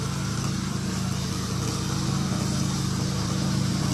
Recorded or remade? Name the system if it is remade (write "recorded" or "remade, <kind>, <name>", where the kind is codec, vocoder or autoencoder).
recorded